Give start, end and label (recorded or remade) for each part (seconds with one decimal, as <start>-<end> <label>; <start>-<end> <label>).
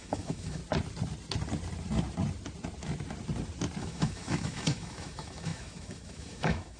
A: 0.0-0.6 remade; 0.6-3.8 recorded; 3.8-6.8 remade